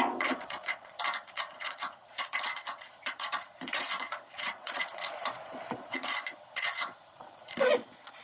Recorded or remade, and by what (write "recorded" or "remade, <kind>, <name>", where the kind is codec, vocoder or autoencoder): remade, vocoder, Vocos